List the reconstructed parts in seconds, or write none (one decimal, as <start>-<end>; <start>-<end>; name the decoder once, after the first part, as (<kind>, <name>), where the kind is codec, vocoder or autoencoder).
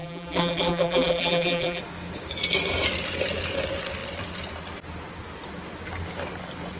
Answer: 0.0-1.8 (vocoder, BigVGAN v2)